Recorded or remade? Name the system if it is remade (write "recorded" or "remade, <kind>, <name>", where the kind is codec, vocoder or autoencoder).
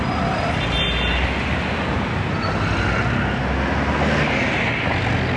recorded